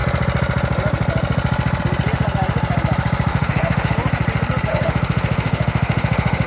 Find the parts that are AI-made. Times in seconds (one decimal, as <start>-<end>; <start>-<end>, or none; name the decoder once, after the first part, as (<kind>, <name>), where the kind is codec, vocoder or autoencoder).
3.3-3.9 (autoencoder, DAC-VAE); 4.7-6.5